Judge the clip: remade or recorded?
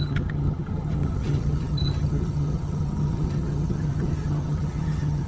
remade